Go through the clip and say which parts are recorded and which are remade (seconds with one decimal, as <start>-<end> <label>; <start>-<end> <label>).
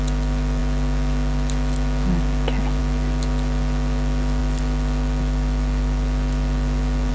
0.0-7.1 recorded